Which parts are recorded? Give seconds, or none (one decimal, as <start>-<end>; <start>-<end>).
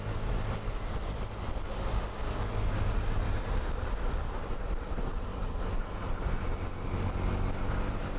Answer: 1.5-4.1